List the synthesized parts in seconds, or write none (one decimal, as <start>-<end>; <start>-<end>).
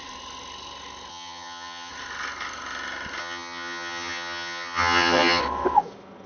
1.1-1.9; 3.2-5.4